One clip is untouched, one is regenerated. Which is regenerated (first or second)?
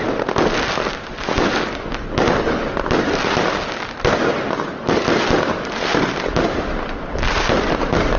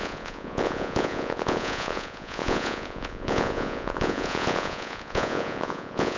second